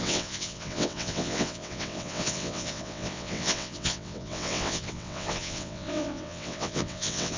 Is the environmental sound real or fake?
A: fake